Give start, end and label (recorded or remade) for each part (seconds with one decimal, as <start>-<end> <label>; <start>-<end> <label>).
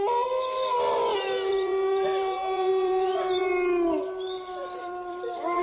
0.0-1.5 recorded; 1.5-3.5 remade; 3.5-4.6 recorded; 4.6-5.6 remade